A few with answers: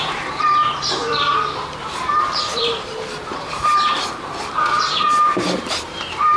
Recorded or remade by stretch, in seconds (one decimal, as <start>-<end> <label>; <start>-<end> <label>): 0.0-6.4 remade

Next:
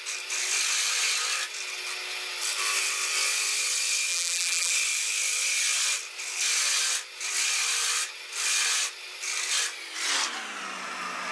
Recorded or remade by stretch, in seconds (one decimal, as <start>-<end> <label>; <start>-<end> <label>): 0.0-4.1 recorded; 4.1-4.7 remade; 4.7-11.3 recorded

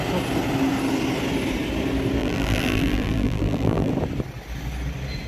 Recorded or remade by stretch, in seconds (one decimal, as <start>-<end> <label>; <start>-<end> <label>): 0.0-2.2 recorded; 2.2-3.9 remade; 3.9-5.3 recorded